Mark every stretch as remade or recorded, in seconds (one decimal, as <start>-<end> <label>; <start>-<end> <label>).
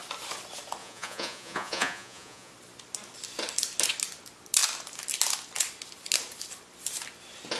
0.0-0.8 recorded; 0.8-2.5 remade; 2.5-7.6 recorded